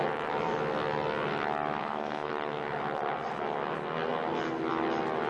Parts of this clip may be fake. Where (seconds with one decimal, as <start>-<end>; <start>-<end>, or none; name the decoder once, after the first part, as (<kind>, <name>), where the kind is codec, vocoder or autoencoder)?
1.8-2.3 (codec, SNAC)